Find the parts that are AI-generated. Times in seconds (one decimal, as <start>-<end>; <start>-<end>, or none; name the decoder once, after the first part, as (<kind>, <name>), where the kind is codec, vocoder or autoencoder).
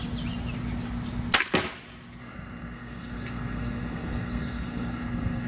2.2-5.5 (codec, SNAC)